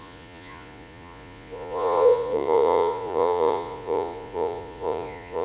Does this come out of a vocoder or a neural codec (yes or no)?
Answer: yes